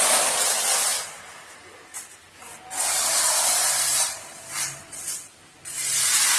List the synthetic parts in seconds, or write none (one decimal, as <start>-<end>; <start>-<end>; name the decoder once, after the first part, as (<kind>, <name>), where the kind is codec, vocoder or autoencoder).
0.9-1.5 (vocoder, BigVGAN v2); 3.1-5.9